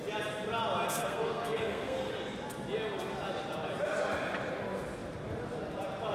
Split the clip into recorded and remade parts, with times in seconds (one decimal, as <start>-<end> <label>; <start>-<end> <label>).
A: 0.0-1.0 recorded; 1.0-2.1 remade; 2.1-6.1 recorded